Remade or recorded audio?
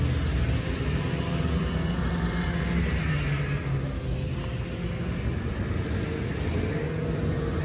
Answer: recorded